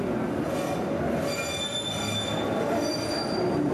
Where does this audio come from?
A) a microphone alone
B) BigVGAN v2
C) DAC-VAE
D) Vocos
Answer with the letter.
A